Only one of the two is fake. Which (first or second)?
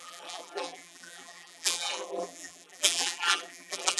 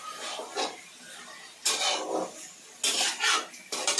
first